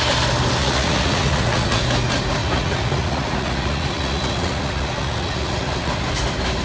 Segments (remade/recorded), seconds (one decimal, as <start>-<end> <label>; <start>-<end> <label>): 0.0-0.6 recorded; 0.6-1.8 remade; 1.8-2.4 recorded; 2.4-5.9 remade; 5.9-6.6 recorded